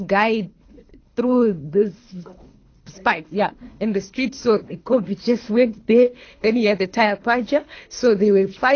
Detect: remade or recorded remade